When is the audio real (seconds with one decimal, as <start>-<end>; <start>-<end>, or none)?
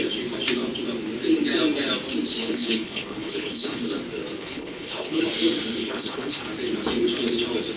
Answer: 0.0-2.4; 3.8-4.4; 5.2-5.8; 6.4-7.8